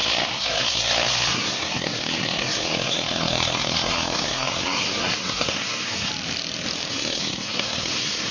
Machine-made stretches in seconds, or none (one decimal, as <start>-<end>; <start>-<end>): 0.0-6.1; 6.9-8.3